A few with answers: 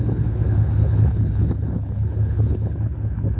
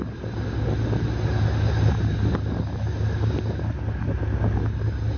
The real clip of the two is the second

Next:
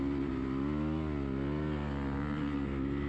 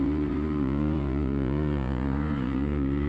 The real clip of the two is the first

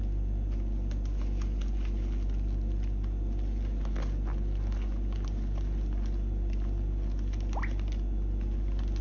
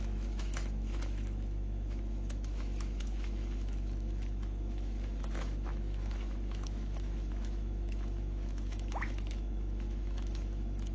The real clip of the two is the first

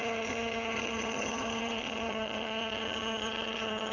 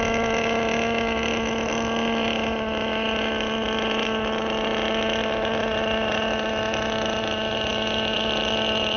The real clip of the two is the second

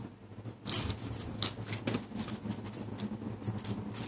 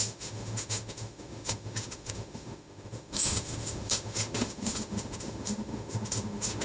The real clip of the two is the first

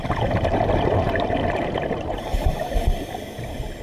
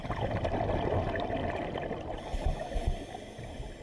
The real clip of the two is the second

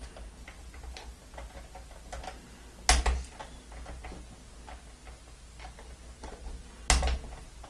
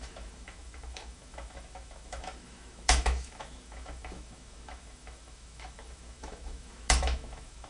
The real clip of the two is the first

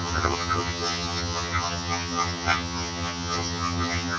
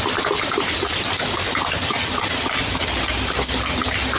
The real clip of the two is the second